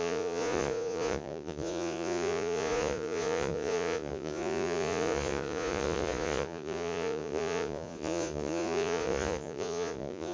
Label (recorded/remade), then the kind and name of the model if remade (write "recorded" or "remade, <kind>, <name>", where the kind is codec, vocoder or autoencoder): remade, vocoder, Vocos